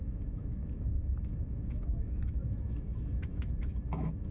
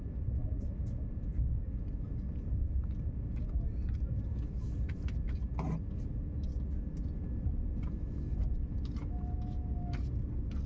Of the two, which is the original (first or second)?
second